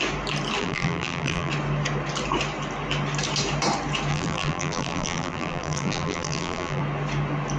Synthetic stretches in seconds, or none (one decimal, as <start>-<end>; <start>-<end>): 0.6-1.5; 4.1-6.8